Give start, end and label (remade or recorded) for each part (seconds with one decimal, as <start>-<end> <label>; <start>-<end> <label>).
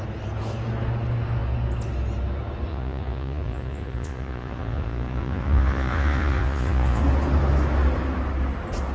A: 0.0-2.7 recorded; 2.7-7.0 remade; 7.0-8.9 recorded